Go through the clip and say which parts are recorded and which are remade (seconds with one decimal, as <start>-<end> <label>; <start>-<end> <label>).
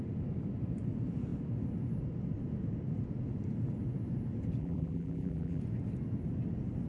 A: 0.0-4.6 recorded; 4.6-5.6 remade; 5.6-6.9 recorded